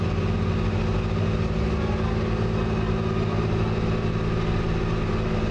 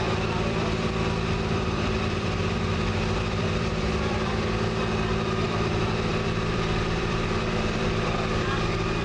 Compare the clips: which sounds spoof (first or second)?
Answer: second